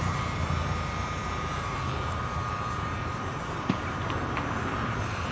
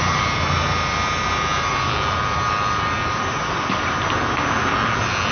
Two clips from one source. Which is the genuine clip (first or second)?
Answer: second